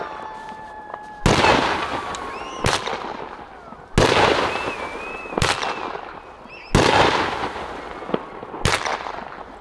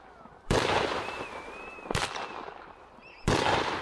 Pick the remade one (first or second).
second